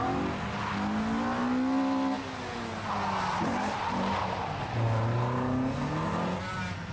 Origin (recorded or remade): recorded